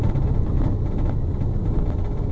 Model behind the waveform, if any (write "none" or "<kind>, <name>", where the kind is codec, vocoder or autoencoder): none